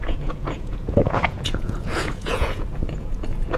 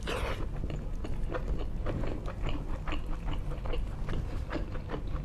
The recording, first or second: second